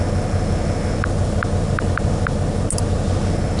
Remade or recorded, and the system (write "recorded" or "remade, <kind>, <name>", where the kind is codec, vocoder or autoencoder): recorded